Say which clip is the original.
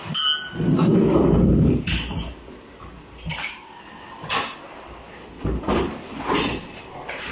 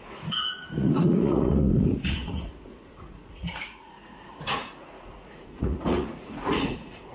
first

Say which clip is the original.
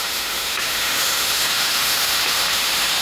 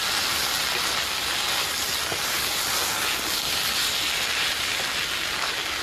second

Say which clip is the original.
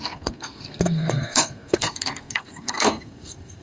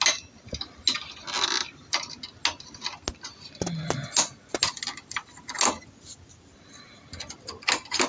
second